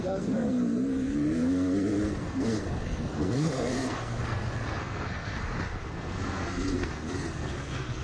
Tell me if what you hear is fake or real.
fake